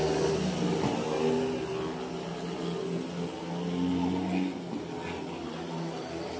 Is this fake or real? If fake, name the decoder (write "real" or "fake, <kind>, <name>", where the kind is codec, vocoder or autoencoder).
real